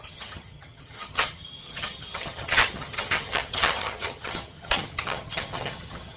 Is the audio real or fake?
fake